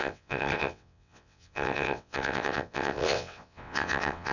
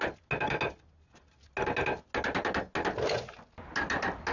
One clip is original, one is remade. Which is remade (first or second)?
first